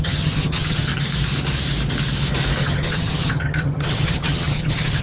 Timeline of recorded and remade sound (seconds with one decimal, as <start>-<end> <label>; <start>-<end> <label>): 0.0-0.9 remade; 0.9-2.6 recorded; 2.6-5.0 remade